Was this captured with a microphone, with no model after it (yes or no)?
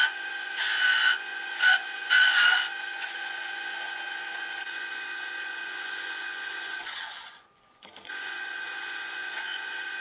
no